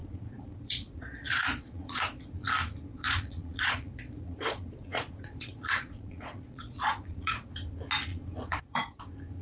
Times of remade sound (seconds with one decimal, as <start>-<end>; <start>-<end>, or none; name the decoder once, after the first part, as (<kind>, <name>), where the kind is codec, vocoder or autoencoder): 0.0-2.5 (vocoder, Vocos); 2.9-7.5; 8.1-9.0

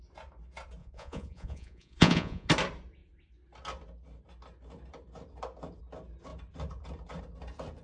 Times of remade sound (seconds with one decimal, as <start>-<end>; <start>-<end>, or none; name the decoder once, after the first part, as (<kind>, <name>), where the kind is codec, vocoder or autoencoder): 0.8-2.5 (vocoder, Vocos)

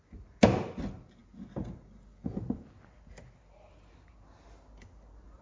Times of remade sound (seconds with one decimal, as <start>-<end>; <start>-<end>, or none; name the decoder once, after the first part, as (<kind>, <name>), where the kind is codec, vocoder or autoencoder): none

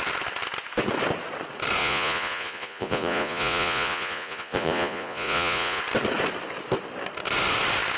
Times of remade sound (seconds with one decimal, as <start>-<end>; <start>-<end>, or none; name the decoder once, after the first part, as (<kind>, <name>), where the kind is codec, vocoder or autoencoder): 1.8-5.8 (vocoder, Vocos)

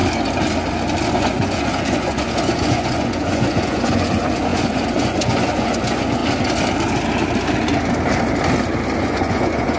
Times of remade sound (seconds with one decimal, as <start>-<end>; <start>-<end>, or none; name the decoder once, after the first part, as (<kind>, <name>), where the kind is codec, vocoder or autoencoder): 1.1-6.2 (vocoder, Vocos); 9.0-9.8